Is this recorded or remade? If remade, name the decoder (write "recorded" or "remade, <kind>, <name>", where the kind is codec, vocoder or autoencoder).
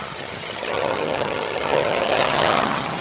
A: remade, vocoder, HiFi-GAN